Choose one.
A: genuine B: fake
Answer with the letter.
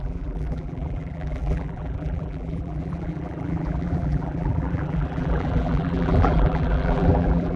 B